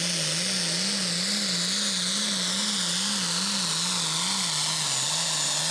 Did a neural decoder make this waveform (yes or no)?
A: no